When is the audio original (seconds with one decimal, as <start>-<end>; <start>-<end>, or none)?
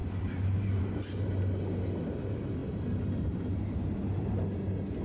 0.0-5.0